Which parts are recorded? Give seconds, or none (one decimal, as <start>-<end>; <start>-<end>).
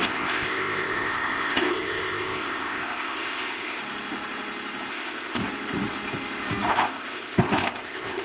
3.8-4.9; 5.4-6.7